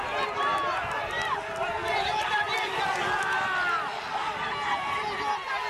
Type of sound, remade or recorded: recorded